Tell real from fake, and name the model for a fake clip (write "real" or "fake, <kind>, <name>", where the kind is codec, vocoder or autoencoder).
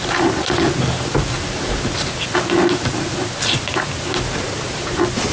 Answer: real